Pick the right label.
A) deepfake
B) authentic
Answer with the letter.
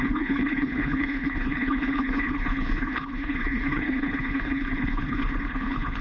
A